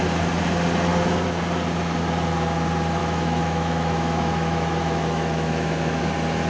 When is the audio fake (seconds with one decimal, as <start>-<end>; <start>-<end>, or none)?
3.0-6.0